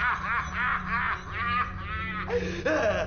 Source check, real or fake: real